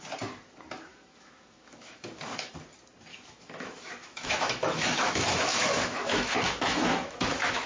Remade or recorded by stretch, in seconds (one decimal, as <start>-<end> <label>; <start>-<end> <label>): 0.0-0.9 recorded; 0.9-2.5 remade; 2.5-3.1 recorded; 3.1-7.7 remade